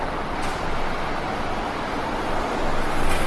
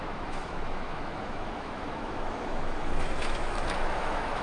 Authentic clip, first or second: first